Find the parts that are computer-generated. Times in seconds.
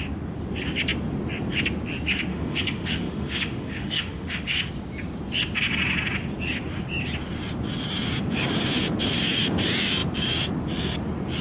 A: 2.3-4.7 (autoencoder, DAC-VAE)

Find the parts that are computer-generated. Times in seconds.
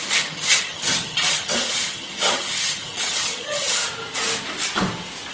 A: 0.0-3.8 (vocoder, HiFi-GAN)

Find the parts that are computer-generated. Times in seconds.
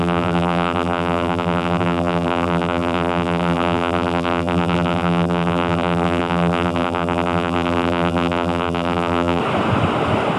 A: 0.0-9.4 (vocoder, BigVGAN v2)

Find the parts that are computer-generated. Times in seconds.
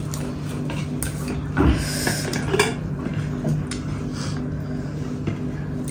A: 2.3-3.0 (vocoder, BigVGAN v2)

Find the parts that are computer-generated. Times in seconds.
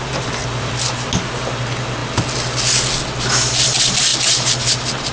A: 0.4-0.9 (vocoder, BigVGAN v2)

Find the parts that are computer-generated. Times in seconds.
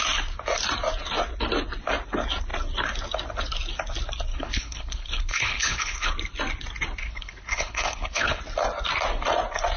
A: 4.3-6.1 (codec, HILCodec); 7.0-8.4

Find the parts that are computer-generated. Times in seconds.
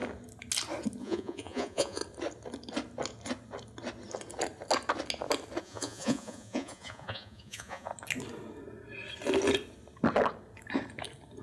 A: 1.0-2.0 (vocoder, Vocos); 5.6-7.9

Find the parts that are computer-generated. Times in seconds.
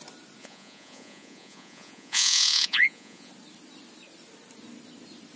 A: 0.4-3.3 (vocoder, Vocos)